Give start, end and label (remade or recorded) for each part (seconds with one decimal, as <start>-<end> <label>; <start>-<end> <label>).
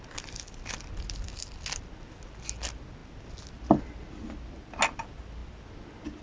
0.0-6.2 recorded